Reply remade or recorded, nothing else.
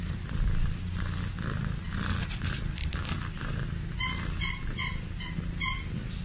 recorded